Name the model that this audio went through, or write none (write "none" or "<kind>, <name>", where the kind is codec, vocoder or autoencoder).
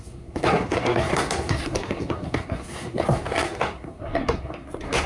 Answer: codec, SNAC